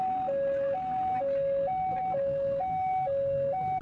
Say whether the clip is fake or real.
real